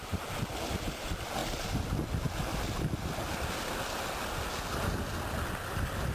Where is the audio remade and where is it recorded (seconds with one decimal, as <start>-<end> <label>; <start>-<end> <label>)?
0.0-0.7 remade; 0.7-1.4 recorded; 1.4-2.1 remade; 2.1-6.1 recorded

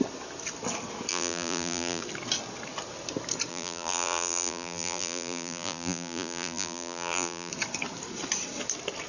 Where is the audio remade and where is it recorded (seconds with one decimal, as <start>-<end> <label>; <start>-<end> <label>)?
0.0-1.1 recorded; 1.1-2.0 remade; 2.0-3.5 recorded; 3.5-7.5 remade; 7.5-9.1 recorded